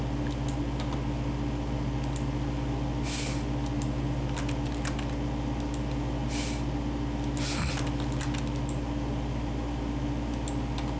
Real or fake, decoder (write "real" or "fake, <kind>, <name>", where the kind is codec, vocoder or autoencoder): real